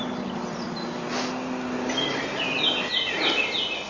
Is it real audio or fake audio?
real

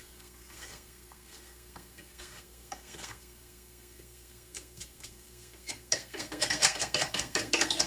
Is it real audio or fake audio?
fake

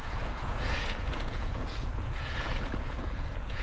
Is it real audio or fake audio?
fake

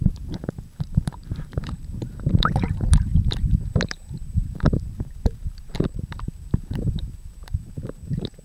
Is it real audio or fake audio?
fake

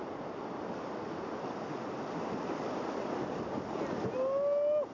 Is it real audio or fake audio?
real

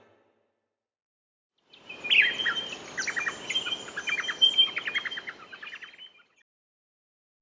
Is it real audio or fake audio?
real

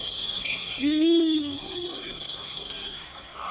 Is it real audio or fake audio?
fake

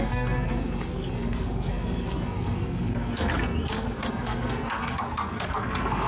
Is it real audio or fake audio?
fake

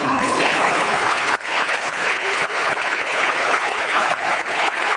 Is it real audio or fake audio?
fake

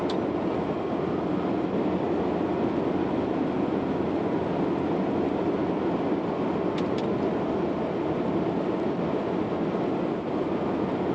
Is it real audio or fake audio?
real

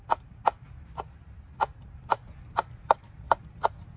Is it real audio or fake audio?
real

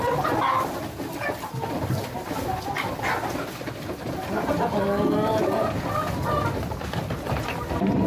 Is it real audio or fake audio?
real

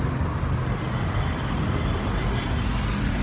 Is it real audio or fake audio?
real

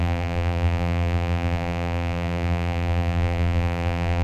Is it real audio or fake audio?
fake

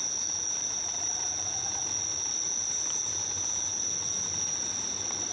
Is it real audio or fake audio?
real